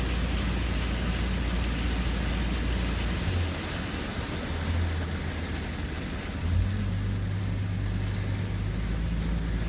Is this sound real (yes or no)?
yes